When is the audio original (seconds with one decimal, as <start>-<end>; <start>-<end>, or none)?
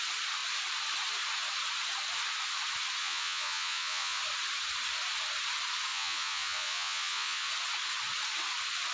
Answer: 0.0-3.0; 4.2-5.9; 7.5-8.9